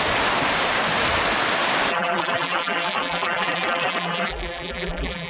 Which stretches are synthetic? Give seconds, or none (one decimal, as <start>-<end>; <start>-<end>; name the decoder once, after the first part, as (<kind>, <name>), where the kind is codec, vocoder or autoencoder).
1.9-5.3 (vocoder, BigVGAN v2)